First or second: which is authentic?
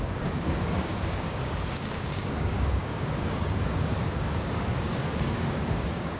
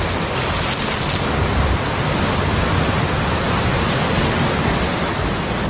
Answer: second